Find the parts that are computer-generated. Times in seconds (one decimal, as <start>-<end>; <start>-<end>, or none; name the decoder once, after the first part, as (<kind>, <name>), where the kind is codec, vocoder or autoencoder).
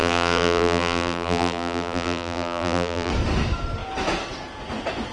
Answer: 0.0-3.1 (vocoder, BigVGAN v2)